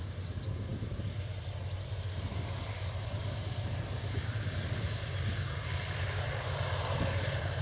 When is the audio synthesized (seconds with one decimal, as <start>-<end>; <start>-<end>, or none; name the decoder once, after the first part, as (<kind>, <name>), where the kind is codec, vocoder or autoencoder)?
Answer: none